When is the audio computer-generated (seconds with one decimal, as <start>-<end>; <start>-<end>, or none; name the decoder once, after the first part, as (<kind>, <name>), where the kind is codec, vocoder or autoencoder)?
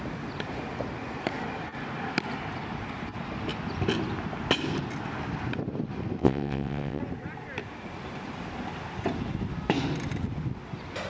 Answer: 6.2-7.0 (vocoder, WaveNeXt)